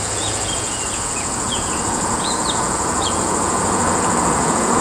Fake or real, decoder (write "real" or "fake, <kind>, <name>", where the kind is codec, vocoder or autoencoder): fake, vocoder, Vocos